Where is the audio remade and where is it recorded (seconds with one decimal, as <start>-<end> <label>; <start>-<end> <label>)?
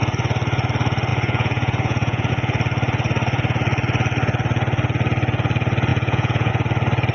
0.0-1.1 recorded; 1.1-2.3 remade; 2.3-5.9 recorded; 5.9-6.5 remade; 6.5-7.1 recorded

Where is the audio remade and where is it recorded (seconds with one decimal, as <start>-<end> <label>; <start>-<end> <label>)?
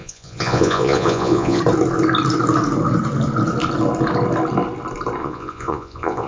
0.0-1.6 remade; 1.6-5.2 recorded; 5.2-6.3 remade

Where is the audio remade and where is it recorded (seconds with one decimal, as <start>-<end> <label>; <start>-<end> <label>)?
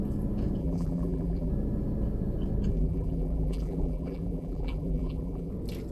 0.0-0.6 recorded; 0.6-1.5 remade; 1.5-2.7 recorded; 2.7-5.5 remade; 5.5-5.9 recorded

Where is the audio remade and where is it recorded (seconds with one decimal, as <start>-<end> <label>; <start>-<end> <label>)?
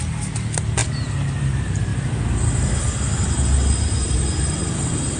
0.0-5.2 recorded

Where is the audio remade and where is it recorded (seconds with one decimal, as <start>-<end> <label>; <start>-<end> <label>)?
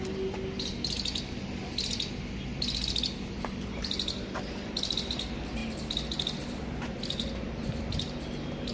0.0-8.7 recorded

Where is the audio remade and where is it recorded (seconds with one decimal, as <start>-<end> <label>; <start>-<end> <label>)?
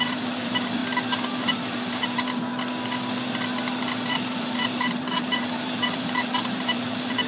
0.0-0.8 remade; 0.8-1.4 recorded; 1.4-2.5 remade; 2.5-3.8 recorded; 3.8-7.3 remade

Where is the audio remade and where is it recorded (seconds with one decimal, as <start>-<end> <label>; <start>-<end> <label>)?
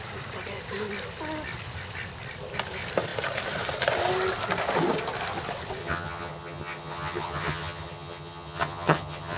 0.0-5.8 recorded; 5.8-9.4 remade